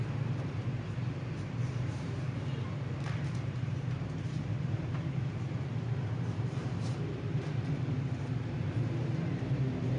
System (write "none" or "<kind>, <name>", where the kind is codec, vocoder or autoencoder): vocoder, BigVGAN v2